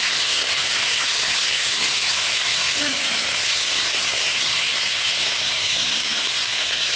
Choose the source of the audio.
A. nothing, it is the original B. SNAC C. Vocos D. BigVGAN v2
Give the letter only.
B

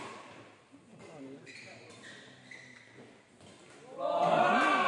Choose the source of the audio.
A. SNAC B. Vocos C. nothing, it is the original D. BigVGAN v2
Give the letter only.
C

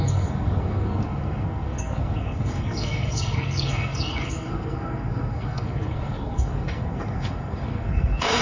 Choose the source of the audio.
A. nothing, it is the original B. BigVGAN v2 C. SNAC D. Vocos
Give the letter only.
C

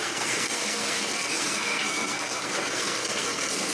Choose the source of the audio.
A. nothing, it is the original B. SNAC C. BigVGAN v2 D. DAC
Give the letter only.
B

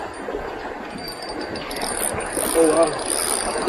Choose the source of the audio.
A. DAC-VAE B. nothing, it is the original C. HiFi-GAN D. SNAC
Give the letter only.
B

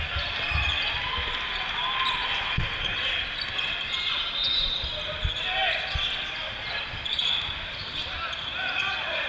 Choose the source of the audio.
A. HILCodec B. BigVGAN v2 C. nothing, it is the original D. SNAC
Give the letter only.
C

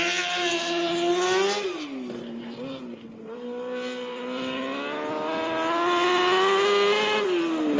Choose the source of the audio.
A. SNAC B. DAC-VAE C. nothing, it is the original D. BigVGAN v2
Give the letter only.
C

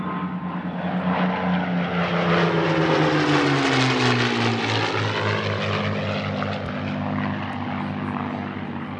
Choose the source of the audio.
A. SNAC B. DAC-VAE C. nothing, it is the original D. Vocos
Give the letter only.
C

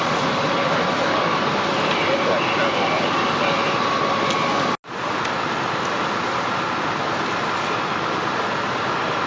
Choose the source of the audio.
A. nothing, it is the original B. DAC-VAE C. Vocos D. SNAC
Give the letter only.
A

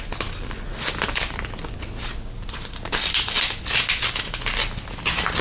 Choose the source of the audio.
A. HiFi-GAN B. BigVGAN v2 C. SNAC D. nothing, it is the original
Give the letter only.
D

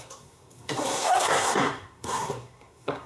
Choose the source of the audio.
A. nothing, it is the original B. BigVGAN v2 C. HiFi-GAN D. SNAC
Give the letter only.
D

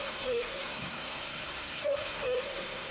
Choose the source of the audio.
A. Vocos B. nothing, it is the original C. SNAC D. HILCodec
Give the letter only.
C